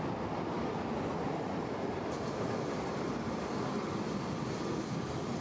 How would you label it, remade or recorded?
remade